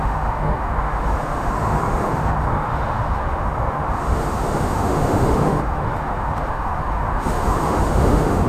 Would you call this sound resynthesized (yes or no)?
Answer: yes